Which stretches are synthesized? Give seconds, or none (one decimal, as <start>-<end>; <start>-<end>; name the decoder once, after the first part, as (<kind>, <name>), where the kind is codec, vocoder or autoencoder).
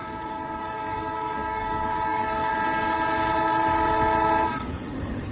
0.0-2.5 (codec, DAC); 4.5-5.3